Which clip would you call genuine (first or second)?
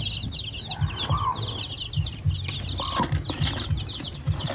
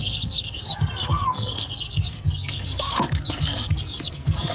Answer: first